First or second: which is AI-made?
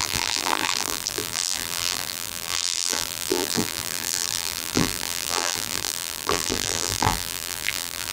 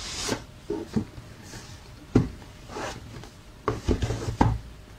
first